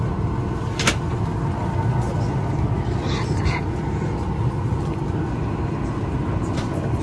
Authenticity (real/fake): real